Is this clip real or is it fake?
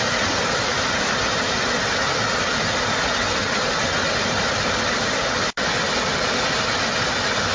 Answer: real